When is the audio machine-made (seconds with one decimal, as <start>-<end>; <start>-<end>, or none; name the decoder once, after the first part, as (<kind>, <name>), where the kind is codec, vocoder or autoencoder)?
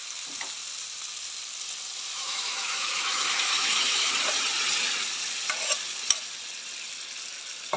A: 2.1-4.1 (autoencoder, DAC-VAE)